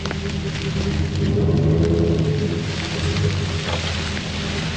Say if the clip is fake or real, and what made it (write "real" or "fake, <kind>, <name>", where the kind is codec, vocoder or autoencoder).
real